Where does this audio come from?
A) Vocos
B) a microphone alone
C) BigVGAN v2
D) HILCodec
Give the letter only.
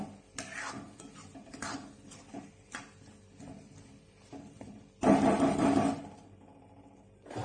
B